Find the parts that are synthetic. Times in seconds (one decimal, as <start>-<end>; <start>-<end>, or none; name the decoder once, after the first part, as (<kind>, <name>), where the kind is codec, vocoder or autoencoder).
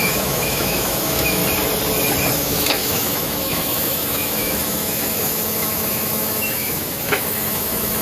0.0-1.4 (autoencoder, DAC-VAE); 2.3-8.0